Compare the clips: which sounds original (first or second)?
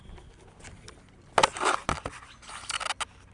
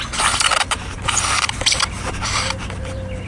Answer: first